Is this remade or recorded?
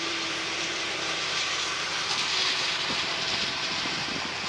remade